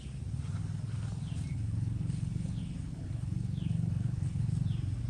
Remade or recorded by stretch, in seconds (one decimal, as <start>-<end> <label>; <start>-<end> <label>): 0.0-1.5 recorded; 1.5-4.5 remade; 4.5-5.1 recorded